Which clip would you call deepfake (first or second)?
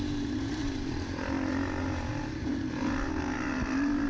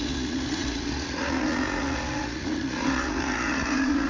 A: second